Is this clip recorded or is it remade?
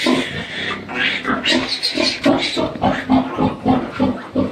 recorded